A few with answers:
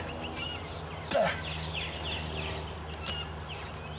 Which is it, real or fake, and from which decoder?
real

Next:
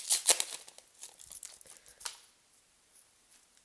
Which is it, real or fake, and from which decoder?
real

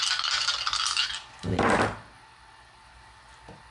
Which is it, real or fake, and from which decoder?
real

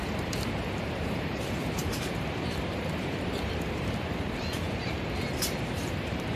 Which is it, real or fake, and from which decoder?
fake, vocoder, BigVGAN v2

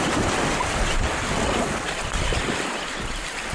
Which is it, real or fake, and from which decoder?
real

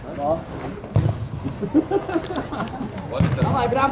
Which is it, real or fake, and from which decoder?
real